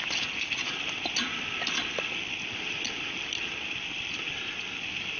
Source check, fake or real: real